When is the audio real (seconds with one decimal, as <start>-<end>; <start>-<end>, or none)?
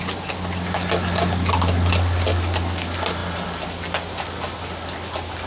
0.0-5.5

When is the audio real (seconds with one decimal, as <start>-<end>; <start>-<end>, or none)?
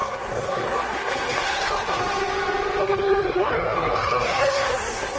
2.0-2.8